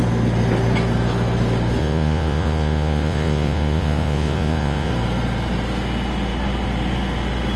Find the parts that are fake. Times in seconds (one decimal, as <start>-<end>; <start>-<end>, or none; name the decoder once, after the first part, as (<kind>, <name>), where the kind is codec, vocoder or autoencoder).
1.8-4.9 (vocoder, Vocos)